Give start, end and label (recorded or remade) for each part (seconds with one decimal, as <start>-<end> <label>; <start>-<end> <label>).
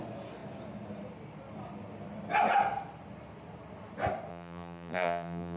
0.0-4.3 recorded; 4.3-5.6 remade